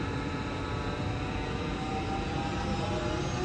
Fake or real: real